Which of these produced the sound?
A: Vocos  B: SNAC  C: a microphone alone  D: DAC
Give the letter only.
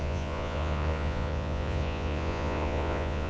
A